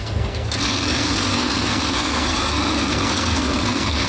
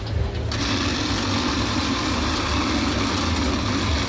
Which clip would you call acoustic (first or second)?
second